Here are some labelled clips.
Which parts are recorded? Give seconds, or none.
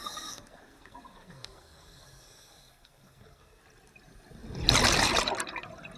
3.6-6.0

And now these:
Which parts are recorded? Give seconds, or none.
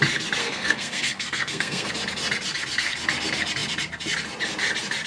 0.0-0.4; 1.9-5.1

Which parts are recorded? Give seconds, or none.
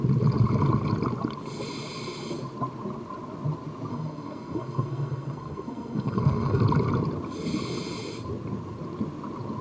0.0-3.9; 6.6-9.6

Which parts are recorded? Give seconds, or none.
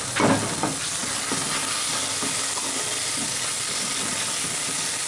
0.0-5.1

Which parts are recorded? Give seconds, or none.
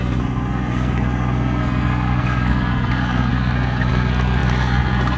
none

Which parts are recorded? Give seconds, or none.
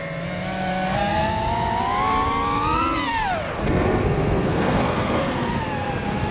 0.0-0.7; 1.3-3.6; 5.5-6.3